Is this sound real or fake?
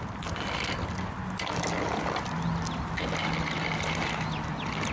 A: real